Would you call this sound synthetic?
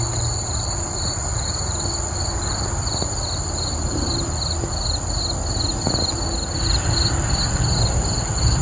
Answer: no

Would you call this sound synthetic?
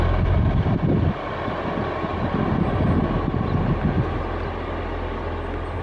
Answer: no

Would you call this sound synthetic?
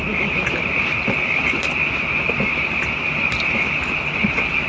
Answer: no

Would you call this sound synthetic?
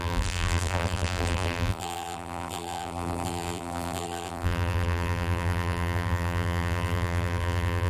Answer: yes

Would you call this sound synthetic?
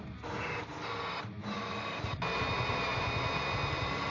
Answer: no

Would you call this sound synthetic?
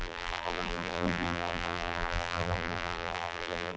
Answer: yes